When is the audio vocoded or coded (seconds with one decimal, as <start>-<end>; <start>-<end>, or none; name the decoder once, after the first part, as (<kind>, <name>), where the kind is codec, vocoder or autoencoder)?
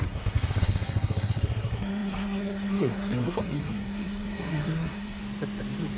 0.0-5.2 (codec, SNAC)